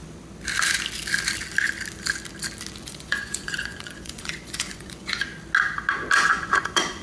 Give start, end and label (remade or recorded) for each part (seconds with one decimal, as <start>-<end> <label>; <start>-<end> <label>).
0.0-2.8 recorded; 2.8-5.3 remade; 5.3-6.3 recorded; 6.3-7.0 remade